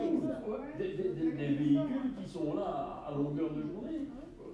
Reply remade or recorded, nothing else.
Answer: recorded